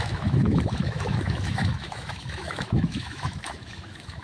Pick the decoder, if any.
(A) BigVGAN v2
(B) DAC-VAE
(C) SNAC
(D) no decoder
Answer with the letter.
B